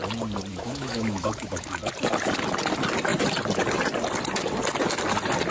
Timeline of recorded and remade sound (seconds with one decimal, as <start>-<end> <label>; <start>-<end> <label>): 0.0-0.5 recorded; 0.5-1.9 remade; 1.9-5.5 recorded

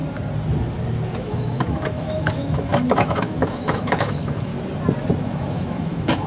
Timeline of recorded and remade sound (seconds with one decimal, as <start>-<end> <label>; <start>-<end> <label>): 0.0-1.2 recorded; 1.2-4.5 remade; 4.5-5.2 recorded; 5.2-6.3 remade

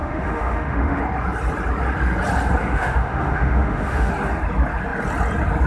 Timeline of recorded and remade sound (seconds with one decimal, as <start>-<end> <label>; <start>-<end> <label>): 0.0-1.0 remade; 1.0-2.6 recorded; 2.6-4.1 remade; 4.1-5.7 recorded

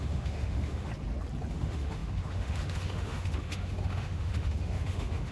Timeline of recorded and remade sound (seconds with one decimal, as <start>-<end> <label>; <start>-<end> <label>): 0.0-0.9 remade; 0.9-1.5 recorded; 1.5-5.3 remade

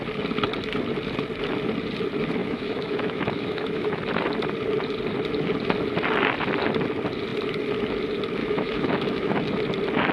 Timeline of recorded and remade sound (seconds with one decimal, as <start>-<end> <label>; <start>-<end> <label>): 0.0-2.4 recorded; 2.4-4.0 remade; 4.0-8.4 recorded; 8.4-9.4 remade; 9.4-10.1 recorded